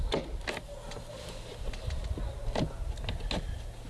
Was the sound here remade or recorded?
recorded